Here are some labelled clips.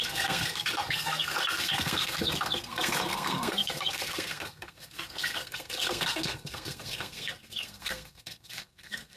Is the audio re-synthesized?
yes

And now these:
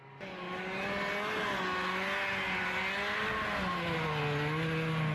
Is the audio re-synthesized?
no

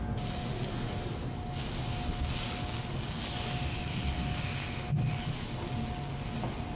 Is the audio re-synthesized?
no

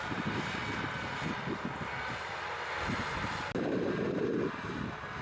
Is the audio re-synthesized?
no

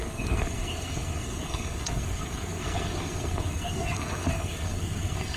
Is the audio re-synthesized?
yes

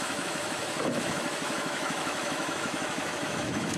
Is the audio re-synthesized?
yes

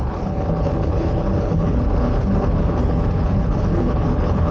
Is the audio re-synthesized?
yes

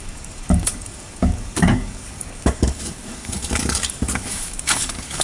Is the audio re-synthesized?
yes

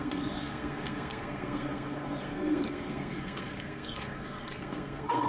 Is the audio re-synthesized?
yes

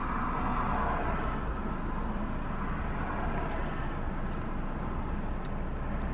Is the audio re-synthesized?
no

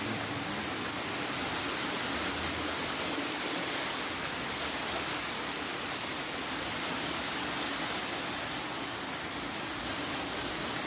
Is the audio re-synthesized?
no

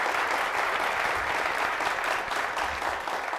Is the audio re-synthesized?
no